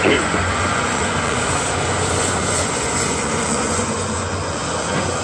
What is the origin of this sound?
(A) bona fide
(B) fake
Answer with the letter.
B